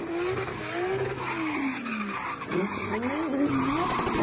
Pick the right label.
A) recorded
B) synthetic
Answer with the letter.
A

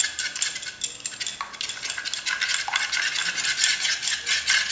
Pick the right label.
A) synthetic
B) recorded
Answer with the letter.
B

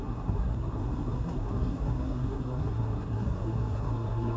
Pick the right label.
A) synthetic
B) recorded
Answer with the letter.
A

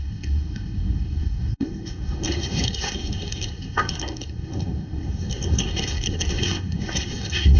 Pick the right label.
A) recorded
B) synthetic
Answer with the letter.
B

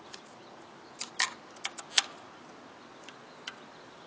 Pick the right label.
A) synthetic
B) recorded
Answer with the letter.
B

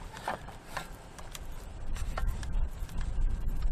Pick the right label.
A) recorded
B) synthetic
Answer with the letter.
B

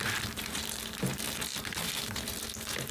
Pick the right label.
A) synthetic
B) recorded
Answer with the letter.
B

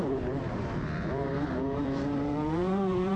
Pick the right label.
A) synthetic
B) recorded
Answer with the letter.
A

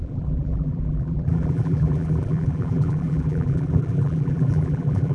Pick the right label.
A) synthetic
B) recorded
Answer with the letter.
A